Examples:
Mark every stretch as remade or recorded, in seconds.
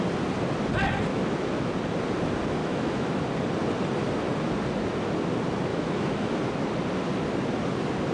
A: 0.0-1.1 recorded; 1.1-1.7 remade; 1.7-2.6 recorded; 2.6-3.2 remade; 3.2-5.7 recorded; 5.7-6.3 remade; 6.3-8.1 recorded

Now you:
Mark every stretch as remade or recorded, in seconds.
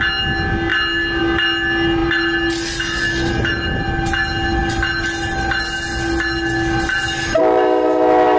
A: 0.0-8.4 recorded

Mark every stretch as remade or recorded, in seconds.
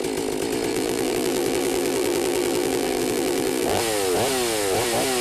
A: 0.0-0.7 recorded; 0.7-3.8 remade; 3.8-5.2 recorded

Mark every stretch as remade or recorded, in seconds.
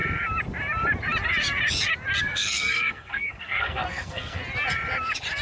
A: 0.0-2.2 recorded; 2.2-4.4 remade; 4.4-5.4 recorded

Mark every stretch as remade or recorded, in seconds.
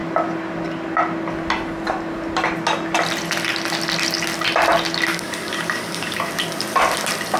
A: 0.0-5.1 recorded; 5.1-6.3 remade; 6.3-7.4 recorded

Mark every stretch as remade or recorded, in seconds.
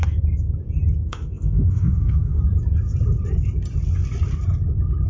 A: 0.0-1.1 recorded; 1.1-2.4 remade; 2.4-5.1 recorded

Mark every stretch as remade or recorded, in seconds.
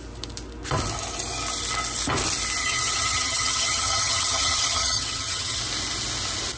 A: 0.0-2.6 recorded; 2.6-5.6 remade; 5.6-6.6 recorded